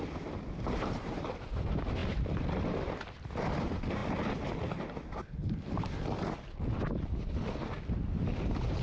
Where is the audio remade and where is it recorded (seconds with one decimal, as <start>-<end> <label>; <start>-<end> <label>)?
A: 0.0-4.0 remade; 4.0-6.8 recorded; 6.8-8.8 remade